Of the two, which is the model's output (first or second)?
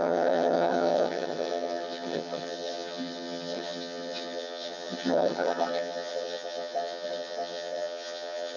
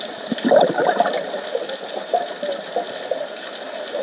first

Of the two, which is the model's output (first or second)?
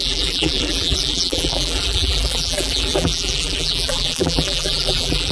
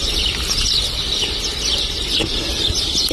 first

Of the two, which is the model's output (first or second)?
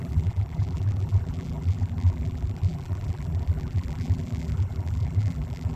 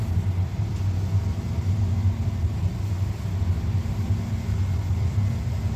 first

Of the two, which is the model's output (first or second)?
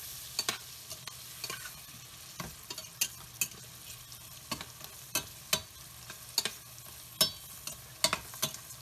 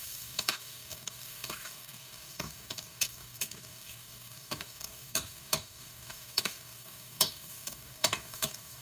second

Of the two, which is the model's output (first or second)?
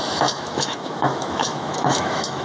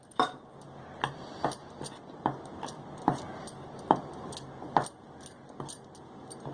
first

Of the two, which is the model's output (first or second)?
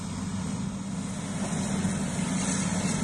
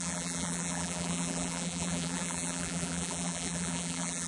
second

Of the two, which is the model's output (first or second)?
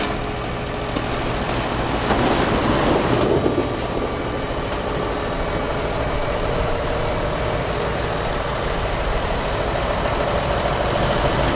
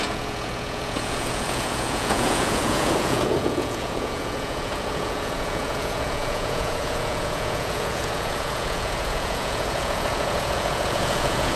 second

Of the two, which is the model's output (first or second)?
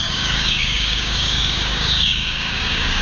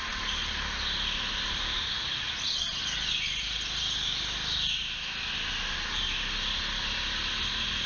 first